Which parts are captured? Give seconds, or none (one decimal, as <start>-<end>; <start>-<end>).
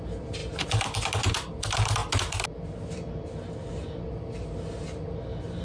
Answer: 0.0-5.6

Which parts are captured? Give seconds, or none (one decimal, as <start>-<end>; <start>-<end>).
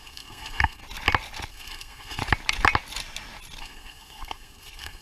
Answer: 0.8-1.5; 2.2-3.6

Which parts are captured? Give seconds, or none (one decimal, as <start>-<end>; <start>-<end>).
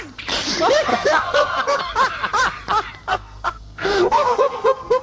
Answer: 0.0-0.9; 1.8-3.1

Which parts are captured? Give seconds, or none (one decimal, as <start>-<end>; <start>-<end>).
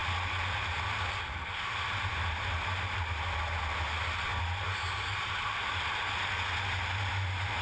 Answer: 0.0-7.6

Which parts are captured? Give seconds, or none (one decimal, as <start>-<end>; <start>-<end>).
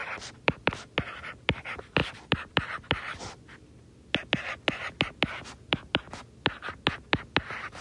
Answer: 0.7-7.8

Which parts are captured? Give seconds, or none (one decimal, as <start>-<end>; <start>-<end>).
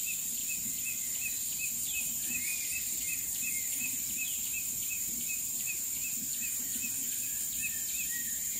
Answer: 0.4-1.7; 6.7-7.8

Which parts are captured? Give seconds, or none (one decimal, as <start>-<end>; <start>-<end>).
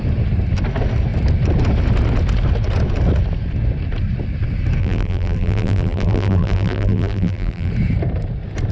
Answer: 0.0-4.8; 7.7-8.7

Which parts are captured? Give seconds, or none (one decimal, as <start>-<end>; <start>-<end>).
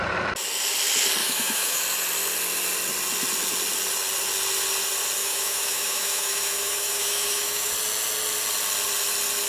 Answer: 0.0-1.2; 1.8-5.2; 7.7-9.5